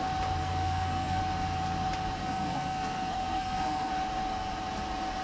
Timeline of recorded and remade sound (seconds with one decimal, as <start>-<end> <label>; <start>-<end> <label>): 0.0-0.4 recorded; 0.4-1.2 remade; 1.2-2.2 recorded; 2.2-3.9 remade; 3.9-5.2 recorded

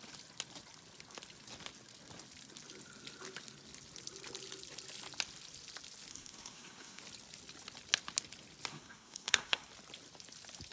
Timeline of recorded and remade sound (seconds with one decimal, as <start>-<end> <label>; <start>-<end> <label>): 0.0-6.1 recorded; 6.1-7.0 remade; 7.0-8.7 recorded; 8.7-9.7 remade; 9.7-10.7 recorded

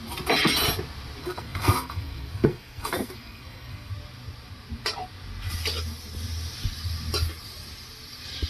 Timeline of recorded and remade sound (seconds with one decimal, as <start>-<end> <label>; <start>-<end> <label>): 0.0-1.2 recorded; 1.2-3.9 remade; 3.9-8.5 recorded